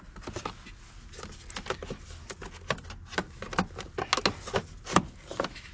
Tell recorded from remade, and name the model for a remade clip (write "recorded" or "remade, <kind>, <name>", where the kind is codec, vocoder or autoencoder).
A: recorded